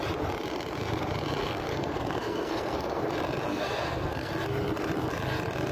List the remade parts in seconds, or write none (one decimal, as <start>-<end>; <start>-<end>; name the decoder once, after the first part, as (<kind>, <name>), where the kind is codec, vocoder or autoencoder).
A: 1.4-3.0 (codec, SNAC); 3.5-4.3